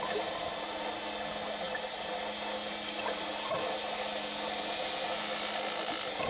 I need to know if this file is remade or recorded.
recorded